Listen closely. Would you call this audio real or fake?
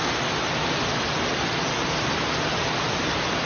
real